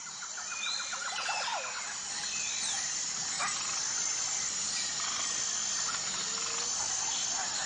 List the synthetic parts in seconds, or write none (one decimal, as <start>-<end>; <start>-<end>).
none